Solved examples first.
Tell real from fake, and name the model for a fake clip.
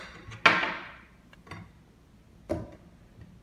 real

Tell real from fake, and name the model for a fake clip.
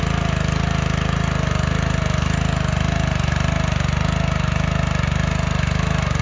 real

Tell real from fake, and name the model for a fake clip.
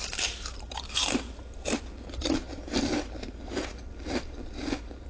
fake, vocoder, BigVGAN v2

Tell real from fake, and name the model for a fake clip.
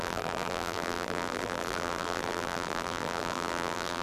fake, vocoder, BigVGAN v2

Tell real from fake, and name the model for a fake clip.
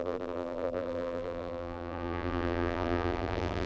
fake, vocoder, BigVGAN v2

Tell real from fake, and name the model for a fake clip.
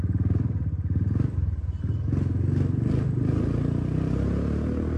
real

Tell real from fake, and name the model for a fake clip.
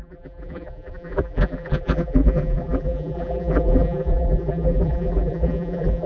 fake, vocoder, BigVGAN v2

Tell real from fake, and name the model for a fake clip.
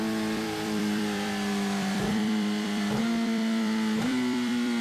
fake, vocoder, BigVGAN v2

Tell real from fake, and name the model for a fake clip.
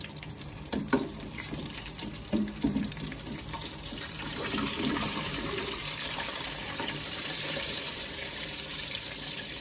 fake, vocoder, BigVGAN v2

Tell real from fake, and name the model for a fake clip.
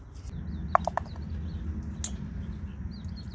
real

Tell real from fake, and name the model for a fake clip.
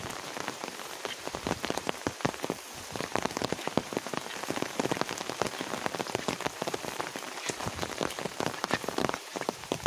fake, vocoder, BigVGAN v2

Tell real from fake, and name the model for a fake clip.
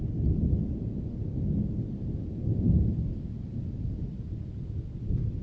real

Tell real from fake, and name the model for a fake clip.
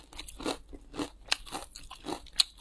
real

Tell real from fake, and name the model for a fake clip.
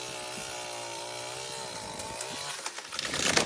real